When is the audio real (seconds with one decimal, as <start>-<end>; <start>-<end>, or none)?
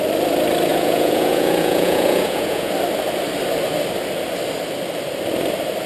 0.0-0.7; 2.7-5.9